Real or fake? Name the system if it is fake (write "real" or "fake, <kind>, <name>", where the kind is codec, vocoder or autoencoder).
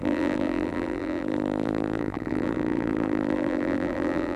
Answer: fake, vocoder, BigVGAN v2